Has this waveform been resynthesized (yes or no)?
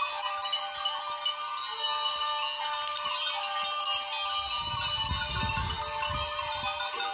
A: no